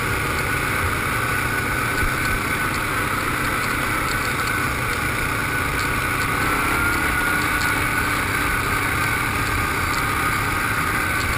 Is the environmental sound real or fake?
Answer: real